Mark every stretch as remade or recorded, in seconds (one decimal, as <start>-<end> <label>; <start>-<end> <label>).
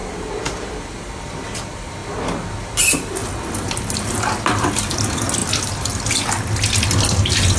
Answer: 0.0-7.6 recorded